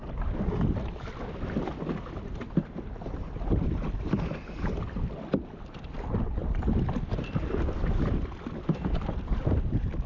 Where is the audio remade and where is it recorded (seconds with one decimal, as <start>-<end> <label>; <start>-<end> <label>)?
0.0-10.1 recorded